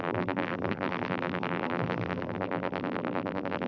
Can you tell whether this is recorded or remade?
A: remade